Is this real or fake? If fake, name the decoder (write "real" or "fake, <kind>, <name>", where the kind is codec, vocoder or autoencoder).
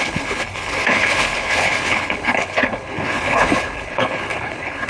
fake, codec, HILCodec